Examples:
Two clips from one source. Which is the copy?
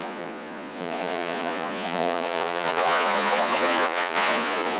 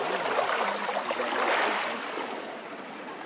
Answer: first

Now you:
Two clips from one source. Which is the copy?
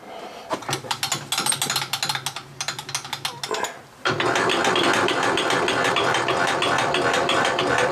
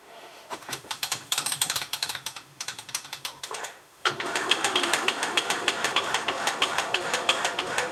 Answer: second